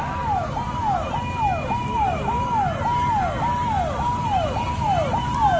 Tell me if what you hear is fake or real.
real